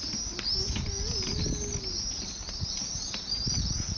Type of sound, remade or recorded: recorded